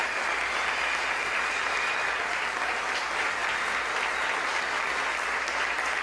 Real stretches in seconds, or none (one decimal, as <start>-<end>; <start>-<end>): 3.4-4.6